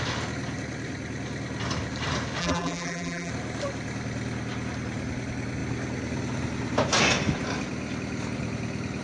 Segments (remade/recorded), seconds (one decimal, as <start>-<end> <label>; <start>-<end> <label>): 0.0-2.4 recorded; 2.4-3.3 remade; 3.3-9.0 recorded